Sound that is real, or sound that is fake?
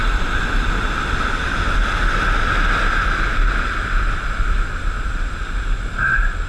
real